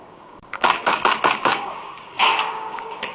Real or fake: fake